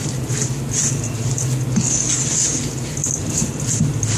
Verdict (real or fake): real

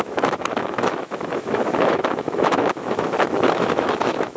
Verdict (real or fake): fake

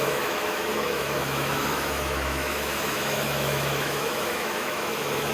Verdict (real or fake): fake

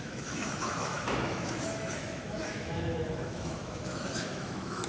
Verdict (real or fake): fake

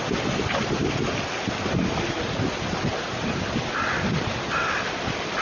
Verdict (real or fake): real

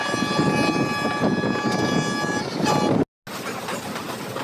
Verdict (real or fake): real